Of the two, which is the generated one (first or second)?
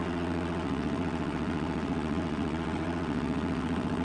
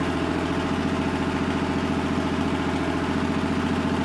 first